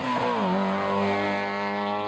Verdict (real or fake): real